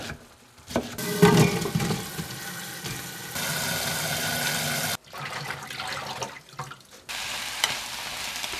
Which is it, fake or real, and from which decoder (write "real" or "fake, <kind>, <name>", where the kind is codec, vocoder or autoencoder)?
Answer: real